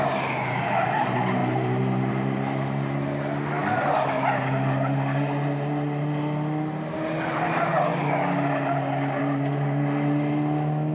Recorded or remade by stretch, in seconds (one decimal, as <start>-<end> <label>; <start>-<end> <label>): 0.0-10.9 recorded